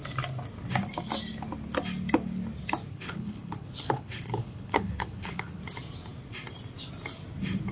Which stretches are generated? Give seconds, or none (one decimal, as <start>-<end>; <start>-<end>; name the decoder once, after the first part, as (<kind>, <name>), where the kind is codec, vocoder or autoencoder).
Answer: 2.9-5.6 (codec, HILCodec)